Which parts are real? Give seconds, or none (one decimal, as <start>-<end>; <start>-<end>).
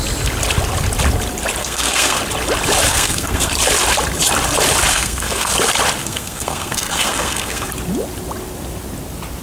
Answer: 0.0-1.6; 2.2-2.9; 3.5-4.9; 5.5-6.0; 7.7-9.4